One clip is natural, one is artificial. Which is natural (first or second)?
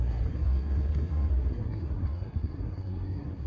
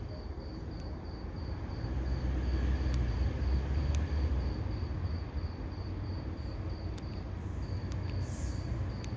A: second